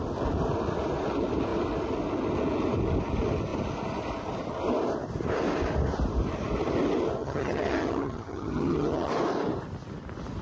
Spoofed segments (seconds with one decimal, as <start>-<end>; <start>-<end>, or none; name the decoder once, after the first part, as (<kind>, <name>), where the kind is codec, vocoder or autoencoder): 7.2-9.1 (vocoder, HiFi-GAN)